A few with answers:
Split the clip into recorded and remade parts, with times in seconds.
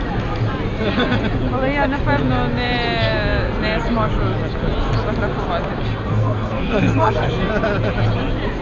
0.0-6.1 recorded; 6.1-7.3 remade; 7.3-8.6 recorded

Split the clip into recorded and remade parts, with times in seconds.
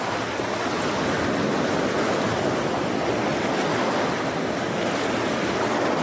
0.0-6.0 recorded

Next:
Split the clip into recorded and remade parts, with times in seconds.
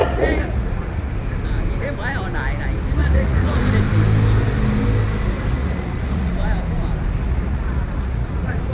0.0-1.1 remade; 1.1-3.0 recorded; 3.0-3.6 remade; 3.6-5.5 recorded; 5.5-6.3 remade; 6.3-7.2 recorded; 7.2-8.7 remade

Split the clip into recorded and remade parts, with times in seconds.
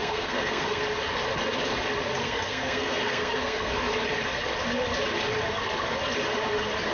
0.0-0.8 remade; 0.8-2.2 recorded; 2.2-3.7 remade; 3.7-6.9 recorded